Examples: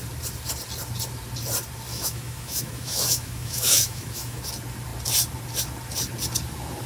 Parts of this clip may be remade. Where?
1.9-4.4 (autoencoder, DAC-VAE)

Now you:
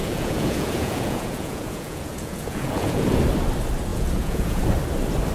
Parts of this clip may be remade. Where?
0.0-3.2 (vocoder, Vocos); 3.9-4.6